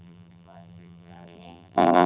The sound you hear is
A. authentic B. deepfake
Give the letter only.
B